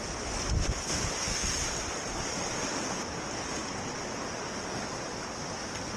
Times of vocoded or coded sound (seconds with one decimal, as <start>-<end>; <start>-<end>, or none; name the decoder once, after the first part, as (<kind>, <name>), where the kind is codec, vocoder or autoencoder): 3.6-4.1 (vocoder, BigVGAN v2)